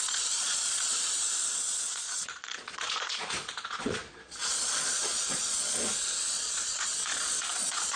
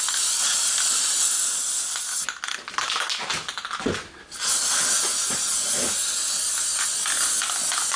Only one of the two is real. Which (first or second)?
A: second